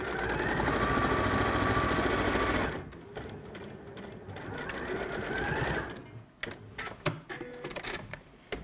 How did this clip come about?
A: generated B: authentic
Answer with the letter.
B